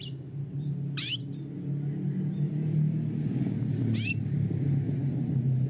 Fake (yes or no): no